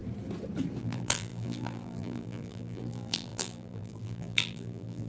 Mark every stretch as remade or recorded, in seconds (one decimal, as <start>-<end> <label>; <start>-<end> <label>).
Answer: 0.0-0.8 recorded; 0.8-5.1 remade